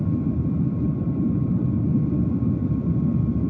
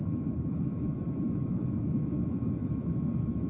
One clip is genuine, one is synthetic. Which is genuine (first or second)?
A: first